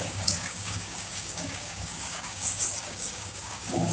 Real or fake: fake